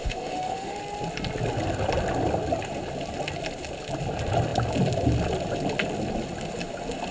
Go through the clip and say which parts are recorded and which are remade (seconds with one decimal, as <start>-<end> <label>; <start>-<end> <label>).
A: 0.0-0.8 remade; 0.8-7.1 recorded